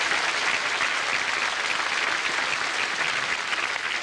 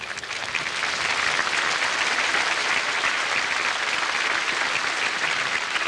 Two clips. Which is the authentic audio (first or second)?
first